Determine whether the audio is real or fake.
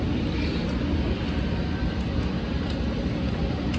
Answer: real